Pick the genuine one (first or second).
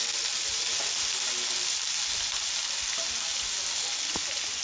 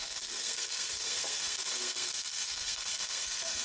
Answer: first